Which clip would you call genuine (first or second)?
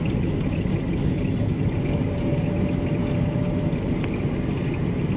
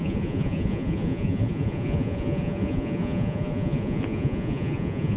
first